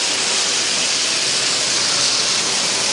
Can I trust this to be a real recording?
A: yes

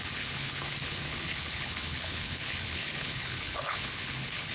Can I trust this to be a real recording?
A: no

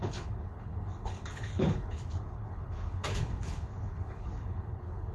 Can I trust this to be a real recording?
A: no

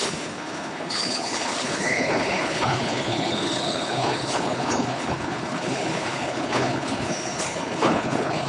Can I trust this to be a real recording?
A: no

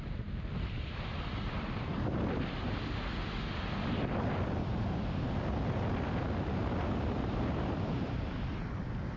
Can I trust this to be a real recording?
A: yes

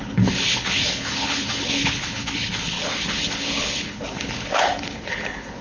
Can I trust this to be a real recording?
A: no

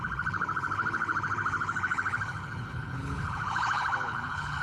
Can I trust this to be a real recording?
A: no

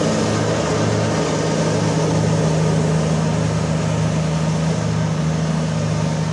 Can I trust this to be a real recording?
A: yes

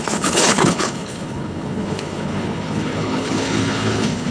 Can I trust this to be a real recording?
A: no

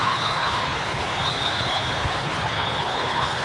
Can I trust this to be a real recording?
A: no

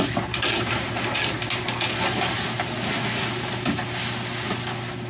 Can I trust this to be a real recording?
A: yes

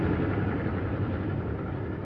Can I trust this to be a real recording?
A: yes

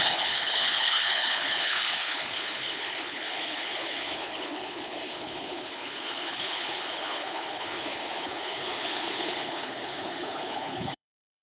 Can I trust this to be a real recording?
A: no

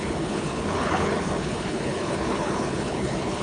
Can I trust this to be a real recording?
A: no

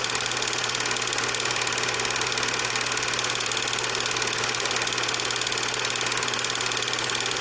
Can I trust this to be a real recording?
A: yes